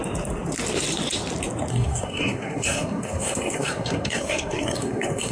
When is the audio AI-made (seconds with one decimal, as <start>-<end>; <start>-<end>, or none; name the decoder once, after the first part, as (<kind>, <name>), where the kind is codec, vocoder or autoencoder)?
1.7-5.3 (codec, SNAC)